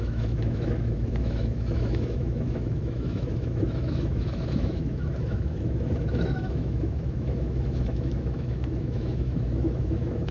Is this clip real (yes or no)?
no